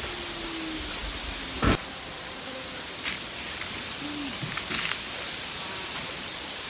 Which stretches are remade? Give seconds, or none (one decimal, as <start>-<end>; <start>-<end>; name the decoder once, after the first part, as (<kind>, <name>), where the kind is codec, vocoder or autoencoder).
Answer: none